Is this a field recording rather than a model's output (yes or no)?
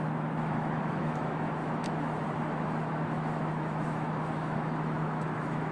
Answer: no